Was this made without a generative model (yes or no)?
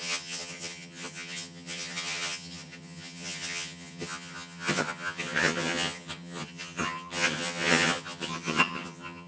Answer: no